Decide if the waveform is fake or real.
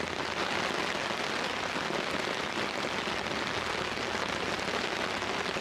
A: real